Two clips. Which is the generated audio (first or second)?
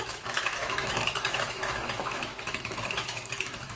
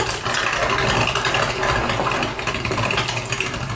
first